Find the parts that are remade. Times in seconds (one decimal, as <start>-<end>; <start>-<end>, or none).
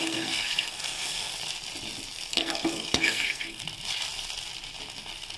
0.0-1.3; 2.3-3.6